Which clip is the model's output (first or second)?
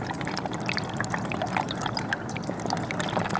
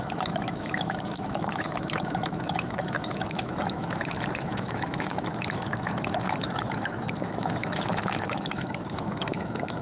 second